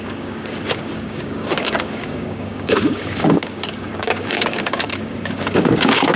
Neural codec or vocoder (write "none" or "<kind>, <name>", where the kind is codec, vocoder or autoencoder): codec, DAC